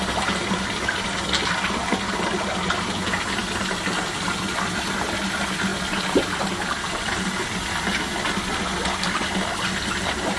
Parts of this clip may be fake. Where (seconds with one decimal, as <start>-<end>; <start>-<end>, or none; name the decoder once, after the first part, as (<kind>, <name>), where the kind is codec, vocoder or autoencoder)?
none